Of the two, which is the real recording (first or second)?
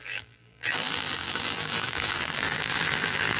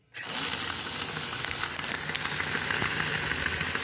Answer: second